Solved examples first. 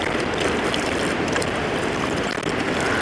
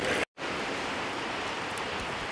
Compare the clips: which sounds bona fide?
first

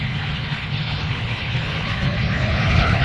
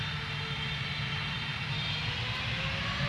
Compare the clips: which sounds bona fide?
second